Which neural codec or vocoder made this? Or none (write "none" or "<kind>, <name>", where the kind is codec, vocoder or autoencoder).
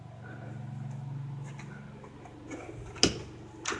none